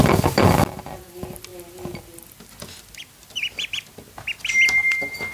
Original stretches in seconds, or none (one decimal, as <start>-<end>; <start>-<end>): 0.0-5.3